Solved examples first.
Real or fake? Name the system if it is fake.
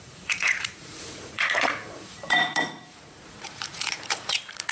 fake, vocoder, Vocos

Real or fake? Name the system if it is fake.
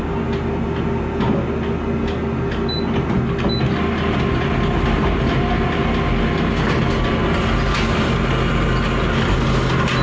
real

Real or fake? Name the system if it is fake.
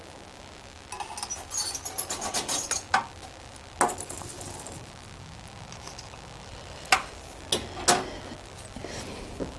real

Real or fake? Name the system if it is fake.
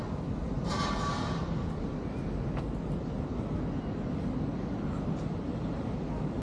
real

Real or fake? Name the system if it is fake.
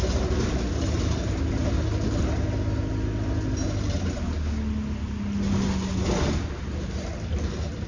real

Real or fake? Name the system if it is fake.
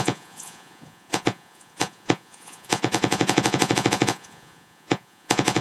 fake, vocoder, Vocos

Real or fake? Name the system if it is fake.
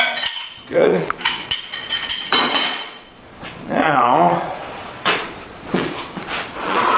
fake, vocoder, Vocos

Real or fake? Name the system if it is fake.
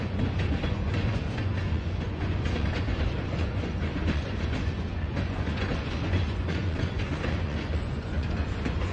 fake, vocoder, Vocos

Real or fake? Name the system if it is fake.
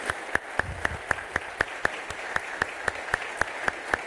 real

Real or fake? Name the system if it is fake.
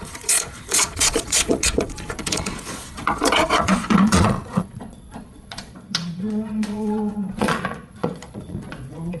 fake, vocoder, Vocos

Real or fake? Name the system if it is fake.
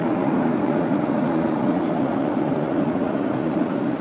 fake, vocoder, Vocos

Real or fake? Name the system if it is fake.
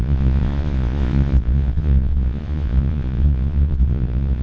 fake, vocoder, Vocos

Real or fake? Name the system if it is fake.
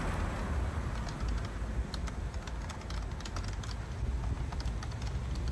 real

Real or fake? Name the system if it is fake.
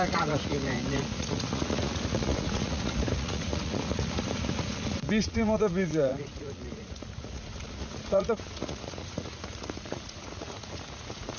fake, vocoder, Vocos